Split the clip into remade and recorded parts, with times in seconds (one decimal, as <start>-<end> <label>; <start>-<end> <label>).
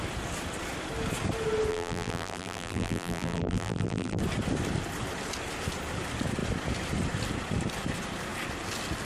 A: 0.0-1.7 recorded; 1.7-4.2 remade; 4.2-9.1 recorded